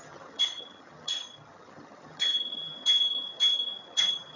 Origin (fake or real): fake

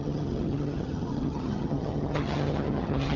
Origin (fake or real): fake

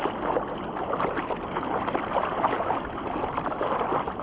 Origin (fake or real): real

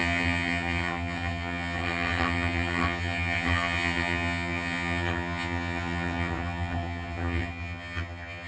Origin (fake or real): fake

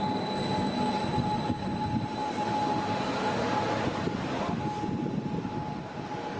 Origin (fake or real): real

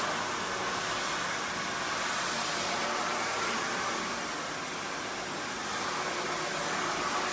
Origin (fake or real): real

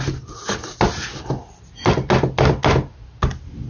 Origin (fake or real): real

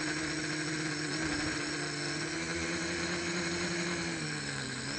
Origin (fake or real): real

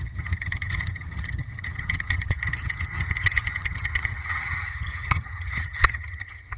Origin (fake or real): fake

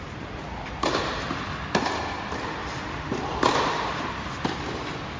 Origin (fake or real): real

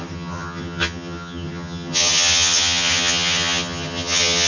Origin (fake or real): fake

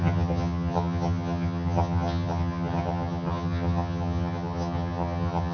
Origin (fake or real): fake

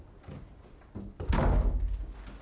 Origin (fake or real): real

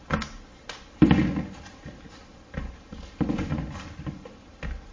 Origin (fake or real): real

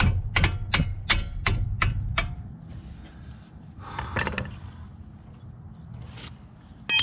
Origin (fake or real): real